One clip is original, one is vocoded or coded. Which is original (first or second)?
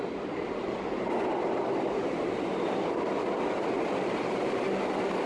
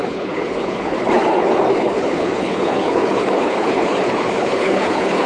first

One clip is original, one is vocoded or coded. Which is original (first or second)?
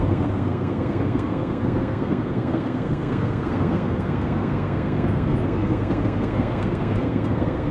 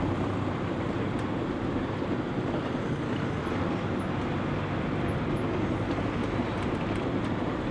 second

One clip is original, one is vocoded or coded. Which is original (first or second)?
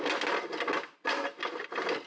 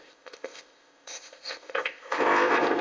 first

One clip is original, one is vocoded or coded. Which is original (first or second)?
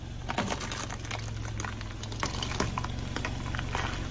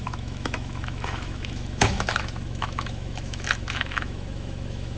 first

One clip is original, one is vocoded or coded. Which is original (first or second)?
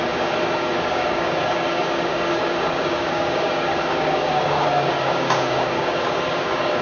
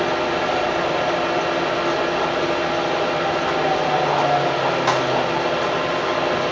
second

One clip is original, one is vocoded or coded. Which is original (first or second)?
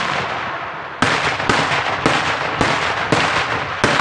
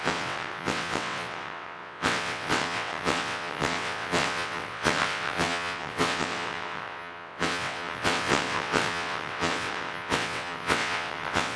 first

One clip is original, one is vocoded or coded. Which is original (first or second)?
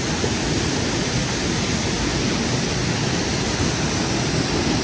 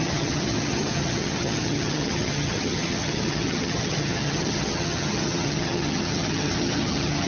first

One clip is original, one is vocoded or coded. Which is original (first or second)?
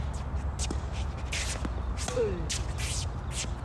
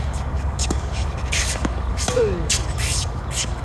first